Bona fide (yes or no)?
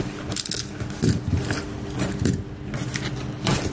yes